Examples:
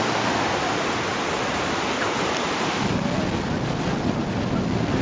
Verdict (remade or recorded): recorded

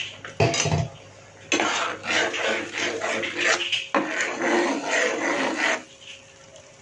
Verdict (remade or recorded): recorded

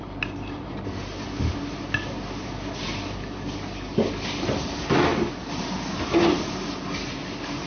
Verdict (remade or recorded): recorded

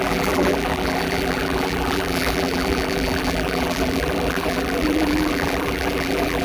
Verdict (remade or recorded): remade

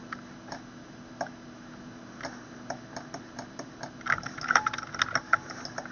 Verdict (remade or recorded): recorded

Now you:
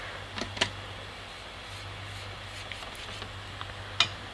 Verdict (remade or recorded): recorded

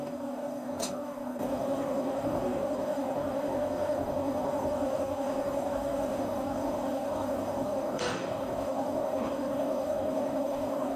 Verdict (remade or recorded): remade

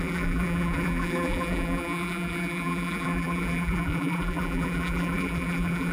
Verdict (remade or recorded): remade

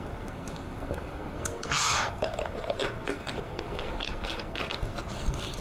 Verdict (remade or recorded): remade